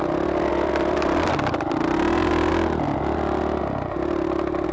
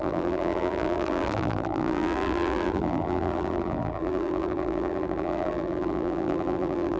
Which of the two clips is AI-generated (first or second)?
second